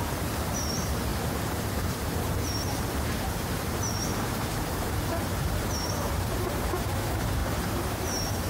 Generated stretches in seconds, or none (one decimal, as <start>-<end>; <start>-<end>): 0.0-8.5